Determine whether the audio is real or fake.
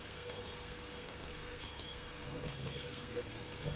fake